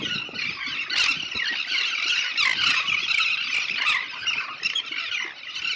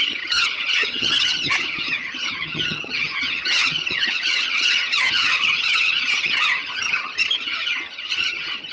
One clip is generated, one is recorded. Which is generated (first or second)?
second